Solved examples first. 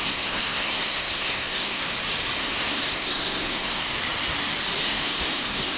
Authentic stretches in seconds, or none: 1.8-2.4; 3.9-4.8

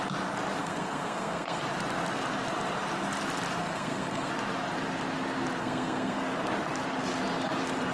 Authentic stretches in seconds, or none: 0.0-0.6; 1.6-3.6; 4.3-5.6; 6.2-7.9

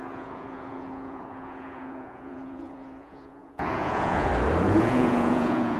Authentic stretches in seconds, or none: 4.3-4.8

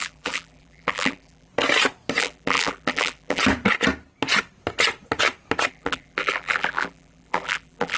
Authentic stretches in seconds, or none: 1.5-2.2; 3.4-5.7

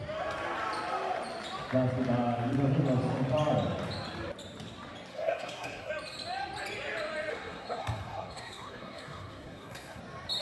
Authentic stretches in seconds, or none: 0.0-5.1; 5.9-7.3; 10.0-10.4

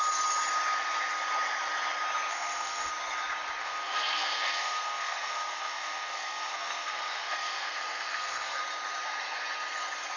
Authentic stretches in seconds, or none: 0.0-2.3; 2.9-3.6; 8.6-10.2

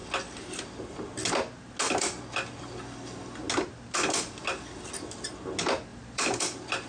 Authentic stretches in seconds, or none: 0.0-5.9